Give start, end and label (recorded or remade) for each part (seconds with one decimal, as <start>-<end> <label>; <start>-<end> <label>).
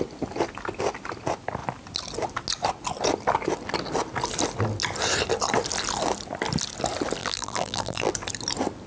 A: 0.0-7.2 recorded; 7.2-8.1 remade; 8.1-8.9 recorded